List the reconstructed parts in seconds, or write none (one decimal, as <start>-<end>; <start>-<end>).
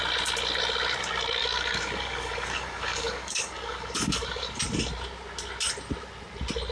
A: 1.4-4.6